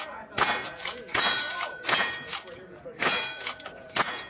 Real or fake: fake